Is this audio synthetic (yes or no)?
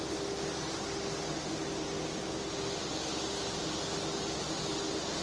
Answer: no